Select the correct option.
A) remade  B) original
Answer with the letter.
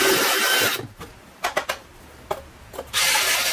B